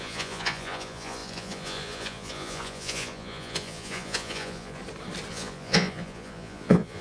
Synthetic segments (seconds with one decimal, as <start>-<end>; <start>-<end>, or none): 0.0-4.8; 5.3-7.0